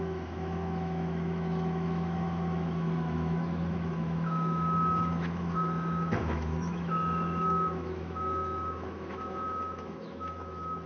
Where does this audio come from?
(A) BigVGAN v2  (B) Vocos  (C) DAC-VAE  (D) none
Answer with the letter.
C